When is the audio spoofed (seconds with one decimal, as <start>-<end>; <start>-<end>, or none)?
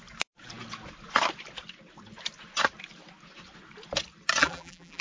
4.4-5.0